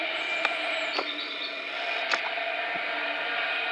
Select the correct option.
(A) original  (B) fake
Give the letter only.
A